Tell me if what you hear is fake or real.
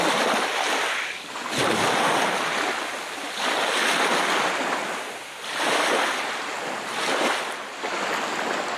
real